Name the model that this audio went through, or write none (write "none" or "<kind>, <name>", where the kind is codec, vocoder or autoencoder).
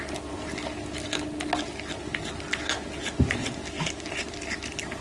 none